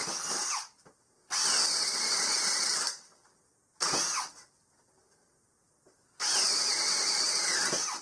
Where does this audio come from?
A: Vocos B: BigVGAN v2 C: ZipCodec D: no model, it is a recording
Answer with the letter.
D